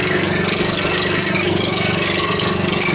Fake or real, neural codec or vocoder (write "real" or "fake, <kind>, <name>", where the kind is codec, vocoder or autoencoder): fake, codec, SNAC